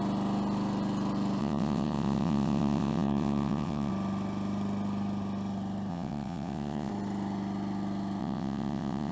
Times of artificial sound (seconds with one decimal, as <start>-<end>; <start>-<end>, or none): 1.4-3.9; 5.9-6.9; 8.2-9.1